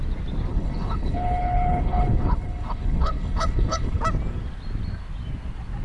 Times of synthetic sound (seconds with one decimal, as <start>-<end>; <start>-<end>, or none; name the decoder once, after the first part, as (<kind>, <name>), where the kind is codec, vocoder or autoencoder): 0.5-4.0 (codec, HILCodec)